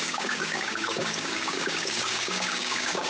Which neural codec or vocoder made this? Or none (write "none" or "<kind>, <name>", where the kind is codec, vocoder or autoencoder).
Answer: codec, DAC